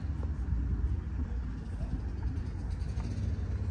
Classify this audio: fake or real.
real